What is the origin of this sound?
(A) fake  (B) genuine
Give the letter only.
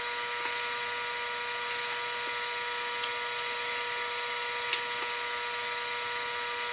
B